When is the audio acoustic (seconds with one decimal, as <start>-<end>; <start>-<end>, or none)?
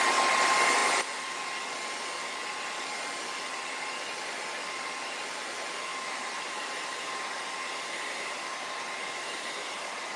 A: 0.0-5.9